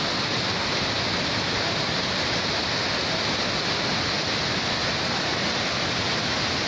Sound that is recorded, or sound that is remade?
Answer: recorded